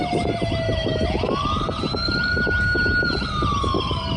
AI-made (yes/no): no